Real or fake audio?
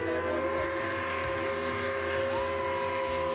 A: real